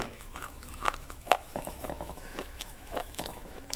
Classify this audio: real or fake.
fake